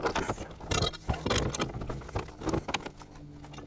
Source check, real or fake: real